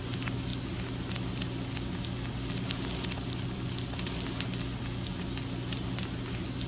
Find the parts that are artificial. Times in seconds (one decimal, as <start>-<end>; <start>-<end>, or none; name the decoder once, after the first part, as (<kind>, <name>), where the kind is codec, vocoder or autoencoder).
none